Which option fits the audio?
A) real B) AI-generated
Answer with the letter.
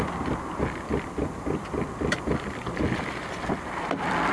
B